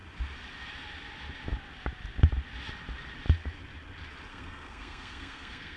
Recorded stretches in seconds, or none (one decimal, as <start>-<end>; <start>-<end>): 0.0-4.3